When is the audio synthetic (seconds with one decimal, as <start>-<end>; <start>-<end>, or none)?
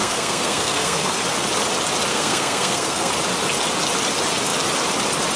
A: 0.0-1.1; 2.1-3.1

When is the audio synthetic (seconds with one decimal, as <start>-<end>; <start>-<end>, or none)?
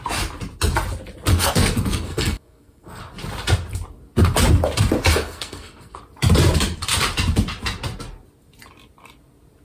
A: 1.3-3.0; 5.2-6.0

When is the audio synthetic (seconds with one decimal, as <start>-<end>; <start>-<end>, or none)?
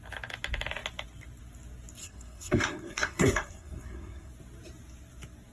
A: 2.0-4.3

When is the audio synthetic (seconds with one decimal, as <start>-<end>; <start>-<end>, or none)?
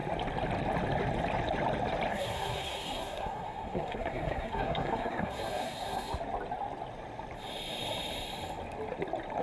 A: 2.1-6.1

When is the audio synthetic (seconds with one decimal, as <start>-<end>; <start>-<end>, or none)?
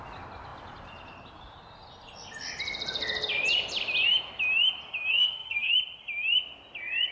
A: 5.1-5.7